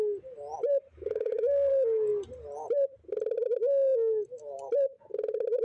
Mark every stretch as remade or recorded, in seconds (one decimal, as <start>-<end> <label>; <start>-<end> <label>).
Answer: 0.0-0.9 recorded; 0.9-1.7 remade; 1.7-5.6 recorded